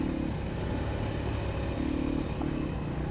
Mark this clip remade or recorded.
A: recorded